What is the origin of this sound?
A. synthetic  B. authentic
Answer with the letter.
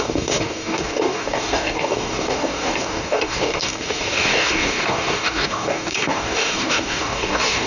A